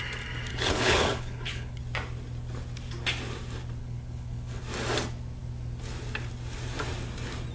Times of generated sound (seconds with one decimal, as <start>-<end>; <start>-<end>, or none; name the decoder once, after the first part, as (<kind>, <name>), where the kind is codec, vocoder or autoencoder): 0.5-1.8 (codec, HILCodec); 3.8-4.6